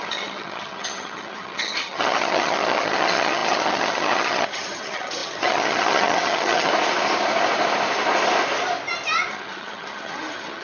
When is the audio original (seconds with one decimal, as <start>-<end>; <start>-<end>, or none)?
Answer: 6.7-9.3